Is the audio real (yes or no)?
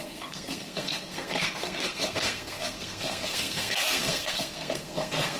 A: no